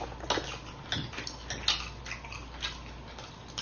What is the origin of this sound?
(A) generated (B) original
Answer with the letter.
B